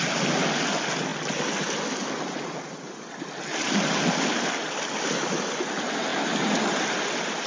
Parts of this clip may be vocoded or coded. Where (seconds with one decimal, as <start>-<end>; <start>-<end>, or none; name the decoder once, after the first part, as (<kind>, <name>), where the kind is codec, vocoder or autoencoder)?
none